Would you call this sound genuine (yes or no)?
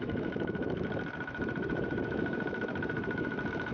no